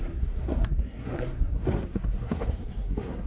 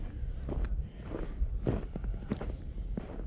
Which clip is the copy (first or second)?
first